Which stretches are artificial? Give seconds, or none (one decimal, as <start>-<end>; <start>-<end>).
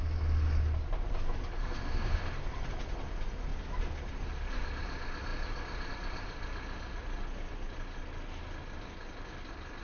1.6-2.2